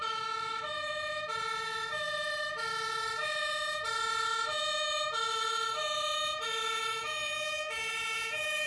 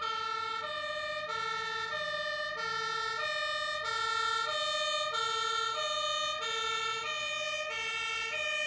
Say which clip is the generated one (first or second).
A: first